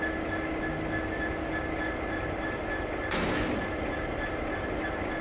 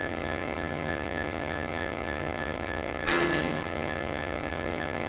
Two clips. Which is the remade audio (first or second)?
second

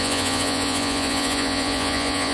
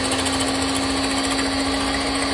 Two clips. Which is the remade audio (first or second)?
first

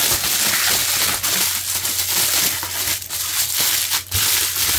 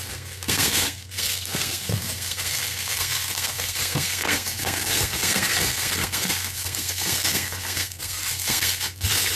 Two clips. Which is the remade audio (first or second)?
second